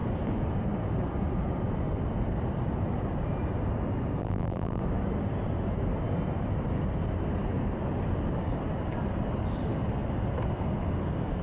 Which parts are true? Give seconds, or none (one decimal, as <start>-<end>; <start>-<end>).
0.0-4.2; 4.8-11.4